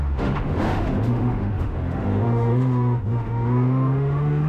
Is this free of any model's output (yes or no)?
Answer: no